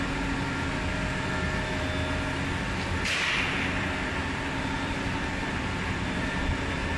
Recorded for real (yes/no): yes